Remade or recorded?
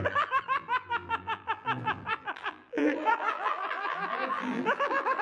remade